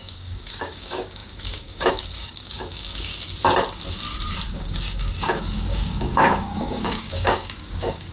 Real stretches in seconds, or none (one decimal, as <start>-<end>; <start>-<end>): 3.1-4.5

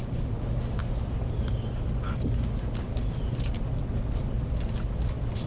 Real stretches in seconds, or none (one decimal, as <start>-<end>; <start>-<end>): 0.0-5.5

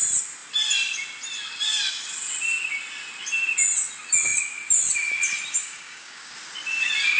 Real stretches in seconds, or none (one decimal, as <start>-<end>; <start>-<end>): 0.0-5.6; 6.3-7.2

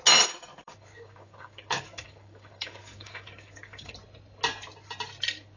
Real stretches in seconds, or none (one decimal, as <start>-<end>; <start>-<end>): 0.0-0.5; 3.9-5.6

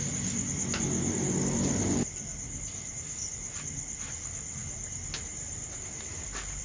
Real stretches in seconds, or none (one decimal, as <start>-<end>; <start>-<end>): 0.0-6.6